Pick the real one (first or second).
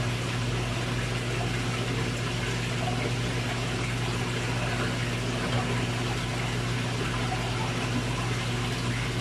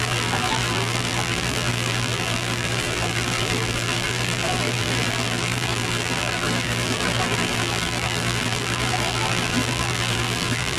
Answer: first